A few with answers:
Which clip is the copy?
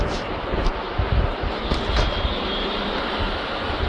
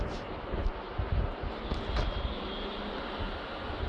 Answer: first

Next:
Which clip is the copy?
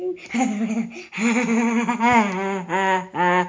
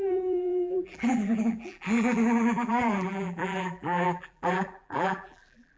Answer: second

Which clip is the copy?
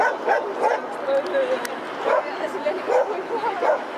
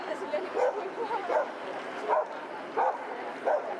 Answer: second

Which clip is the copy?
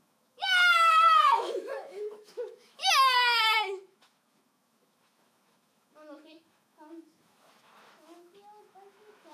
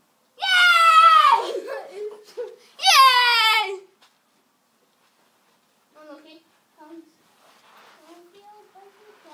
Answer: first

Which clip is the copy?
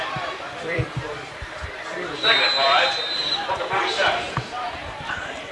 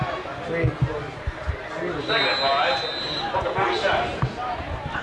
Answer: first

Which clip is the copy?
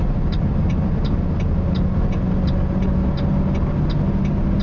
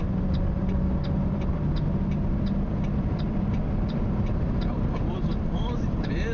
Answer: second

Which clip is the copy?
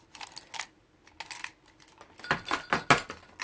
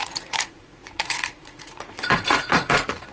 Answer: second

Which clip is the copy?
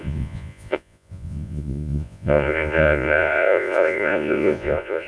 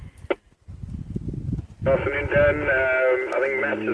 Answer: first